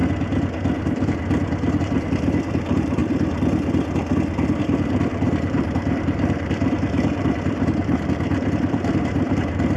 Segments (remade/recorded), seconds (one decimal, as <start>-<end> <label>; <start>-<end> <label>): 0.0-1.8 recorded; 1.8-3.0 remade; 3.0-4.6 recorded; 4.6-9.8 remade